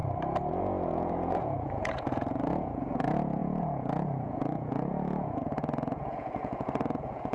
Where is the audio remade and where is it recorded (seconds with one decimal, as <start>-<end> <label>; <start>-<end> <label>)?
0.0-0.5 recorded; 0.5-7.3 remade